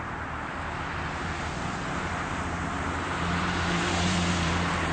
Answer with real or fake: fake